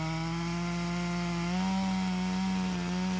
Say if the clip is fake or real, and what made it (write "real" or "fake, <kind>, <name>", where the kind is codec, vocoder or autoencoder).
real